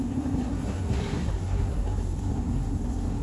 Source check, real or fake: fake